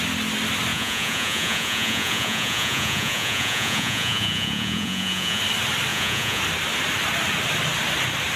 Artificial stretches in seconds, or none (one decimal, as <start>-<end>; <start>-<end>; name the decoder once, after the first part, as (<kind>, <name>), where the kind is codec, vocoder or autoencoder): 0.7-5.4 (vocoder, Vocos); 5.9-6.4